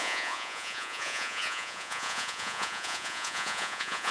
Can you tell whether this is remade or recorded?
remade